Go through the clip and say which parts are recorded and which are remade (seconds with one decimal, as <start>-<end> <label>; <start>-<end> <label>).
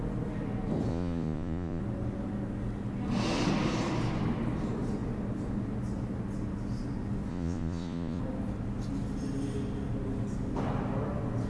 0.0-0.9 recorded; 0.9-1.8 remade; 1.8-7.3 recorded; 7.3-8.2 remade; 8.2-11.5 recorded